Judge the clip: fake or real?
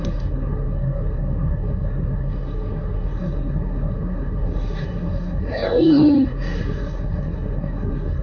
fake